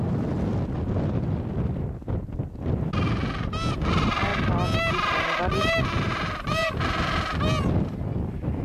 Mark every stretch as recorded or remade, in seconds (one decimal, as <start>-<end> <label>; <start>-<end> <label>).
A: 0.0-8.6 recorded